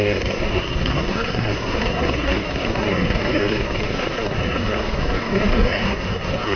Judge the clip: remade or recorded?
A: remade